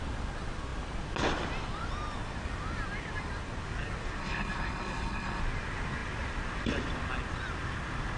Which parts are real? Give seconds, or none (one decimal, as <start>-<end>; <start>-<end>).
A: 0.0-4.2; 5.4-8.2